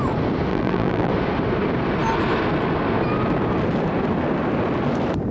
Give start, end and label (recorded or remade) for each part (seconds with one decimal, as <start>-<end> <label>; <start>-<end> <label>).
0.0-0.5 recorded; 0.5-1.1 remade; 1.1-5.3 recorded